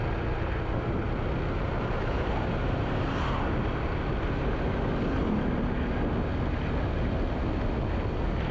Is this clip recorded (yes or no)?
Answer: yes